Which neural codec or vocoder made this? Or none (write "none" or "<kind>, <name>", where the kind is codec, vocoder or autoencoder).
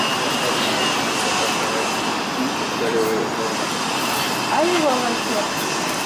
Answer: none